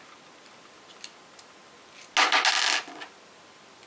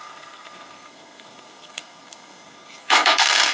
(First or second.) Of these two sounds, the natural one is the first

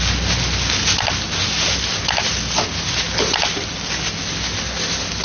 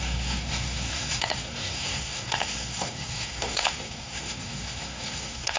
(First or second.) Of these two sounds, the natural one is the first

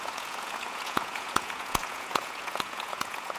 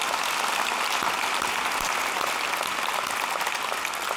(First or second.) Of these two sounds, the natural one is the second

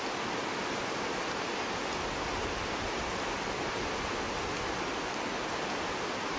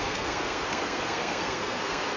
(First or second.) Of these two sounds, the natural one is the first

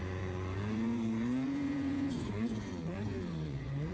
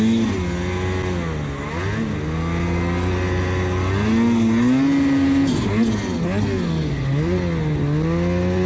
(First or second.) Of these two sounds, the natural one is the second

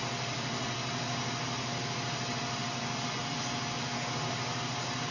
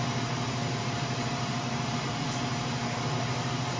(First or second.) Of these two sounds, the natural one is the first